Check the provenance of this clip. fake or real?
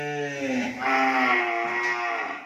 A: real